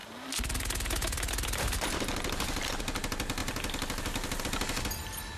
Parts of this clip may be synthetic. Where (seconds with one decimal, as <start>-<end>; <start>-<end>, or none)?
0.0-2.8; 3.4-4.4